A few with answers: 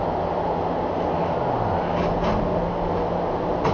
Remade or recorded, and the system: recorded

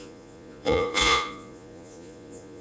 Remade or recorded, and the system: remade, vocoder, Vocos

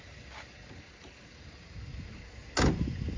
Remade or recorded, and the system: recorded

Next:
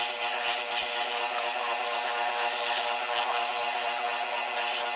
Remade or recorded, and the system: recorded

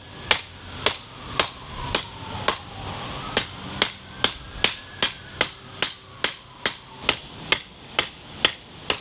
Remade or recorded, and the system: recorded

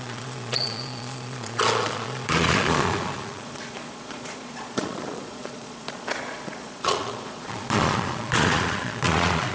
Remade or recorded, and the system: remade, vocoder, Vocos